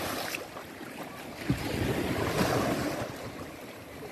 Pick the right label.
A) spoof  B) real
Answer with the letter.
B